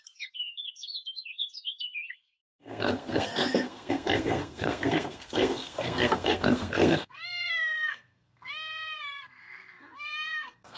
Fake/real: fake